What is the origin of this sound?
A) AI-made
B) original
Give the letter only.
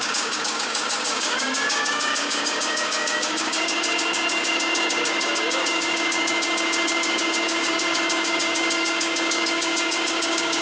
A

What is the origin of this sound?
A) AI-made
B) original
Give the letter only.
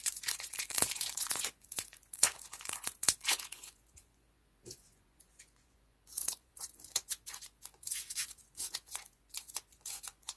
A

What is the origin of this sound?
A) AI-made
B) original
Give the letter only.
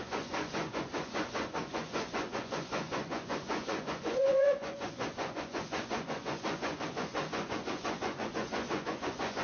A